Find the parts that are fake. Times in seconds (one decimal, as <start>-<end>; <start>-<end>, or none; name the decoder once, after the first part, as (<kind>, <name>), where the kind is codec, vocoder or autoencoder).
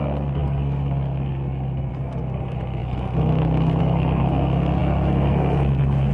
0.0-6.1 (codec, SNAC)